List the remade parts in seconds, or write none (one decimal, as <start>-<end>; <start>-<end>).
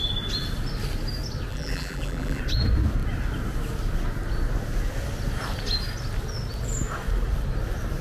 1.5-2.4